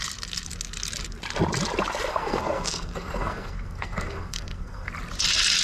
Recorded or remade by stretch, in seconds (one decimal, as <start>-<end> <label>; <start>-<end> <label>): 0.0-2.1 recorded; 2.1-4.9 remade; 4.9-5.6 recorded